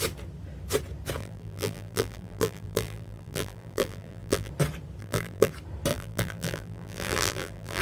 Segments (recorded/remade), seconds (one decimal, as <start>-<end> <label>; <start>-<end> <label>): 0.0-1.2 recorded; 1.2-4.5 remade; 4.5-5.0 recorded; 5.0-5.5 remade; 5.5-5.9 recorded; 5.9-7.8 remade